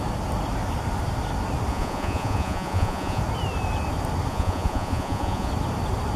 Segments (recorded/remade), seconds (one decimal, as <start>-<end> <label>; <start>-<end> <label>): 0.0-1.7 recorded; 1.7-3.2 remade; 3.2-4.3 recorded; 4.3-5.5 remade; 5.5-6.2 recorded